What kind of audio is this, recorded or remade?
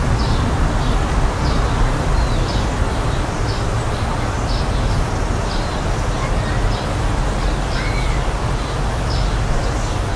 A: recorded